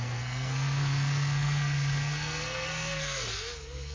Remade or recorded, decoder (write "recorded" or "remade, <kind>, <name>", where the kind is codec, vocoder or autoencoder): remade, codec, SNAC